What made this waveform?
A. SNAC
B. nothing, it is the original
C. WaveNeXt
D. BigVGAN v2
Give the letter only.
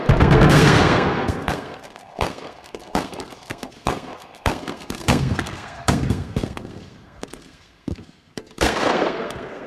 A